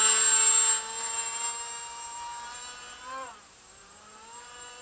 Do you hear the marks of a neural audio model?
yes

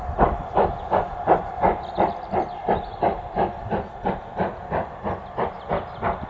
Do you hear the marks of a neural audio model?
no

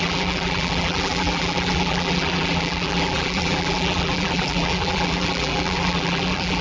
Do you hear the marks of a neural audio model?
yes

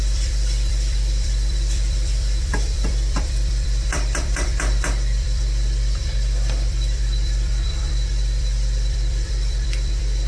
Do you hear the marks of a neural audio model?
yes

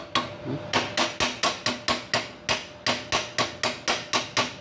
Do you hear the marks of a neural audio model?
no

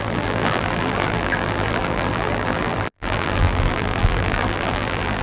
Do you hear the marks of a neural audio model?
yes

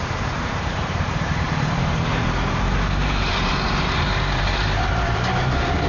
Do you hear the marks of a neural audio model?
yes